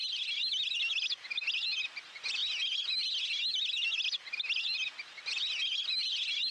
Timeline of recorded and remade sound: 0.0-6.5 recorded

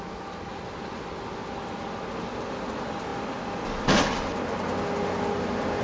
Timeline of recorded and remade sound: 0.0-5.8 recorded

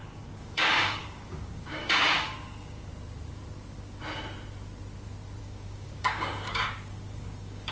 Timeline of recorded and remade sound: 0.0-2.9 remade; 2.9-5.4 recorded; 5.4-7.7 remade

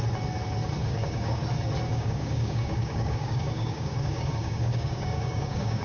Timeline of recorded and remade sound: 0.0-0.8 recorded; 0.8-1.4 remade; 1.4-1.9 recorded; 1.9-5.8 remade

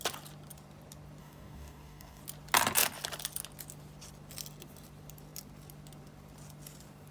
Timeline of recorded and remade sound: 0.0-1.2 recorded; 1.2-2.2 remade; 2.2-7.1 recorded

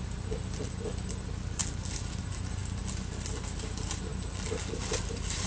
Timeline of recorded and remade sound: 0.0-5.5 recorded

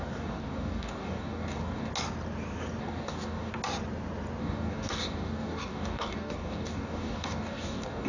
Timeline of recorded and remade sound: 0.0-1.9 remade; 1.9-2.8 recorded; 2.8-3.5 remade; 3.5-4.4 recorded; 4.4-8.1 remade